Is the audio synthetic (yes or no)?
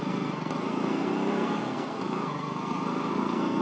yes